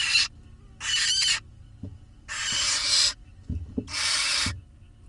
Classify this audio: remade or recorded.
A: recorded